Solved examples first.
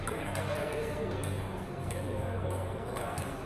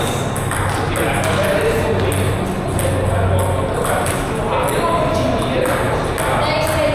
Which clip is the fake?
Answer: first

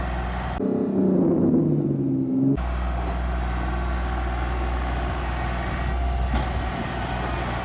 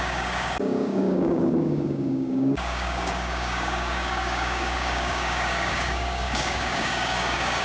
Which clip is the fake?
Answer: second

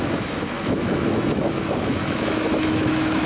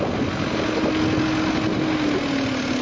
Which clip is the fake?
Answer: first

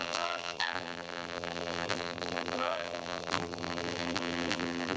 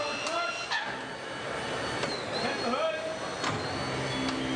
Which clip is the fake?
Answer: first